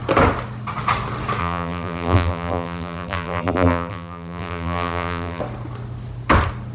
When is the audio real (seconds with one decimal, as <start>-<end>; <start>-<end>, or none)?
0.0-1.4; 5.4-6.7